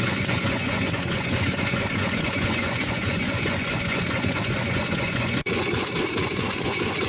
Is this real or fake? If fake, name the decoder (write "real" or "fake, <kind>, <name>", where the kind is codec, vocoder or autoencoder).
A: fake, vocoder, Vocos